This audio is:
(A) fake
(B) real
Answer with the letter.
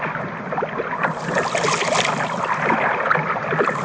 B